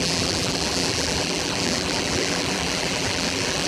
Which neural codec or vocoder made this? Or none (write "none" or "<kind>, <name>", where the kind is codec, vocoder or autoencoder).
vocoder, BigVGAN v2